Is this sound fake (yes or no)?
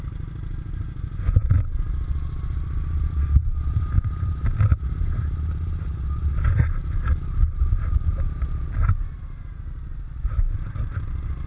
no